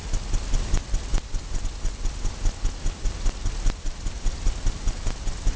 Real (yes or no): yes